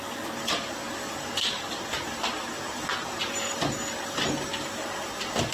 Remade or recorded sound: recorded